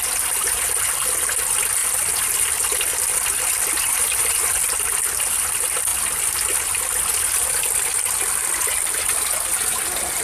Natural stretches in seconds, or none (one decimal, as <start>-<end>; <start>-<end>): 0.0-10.2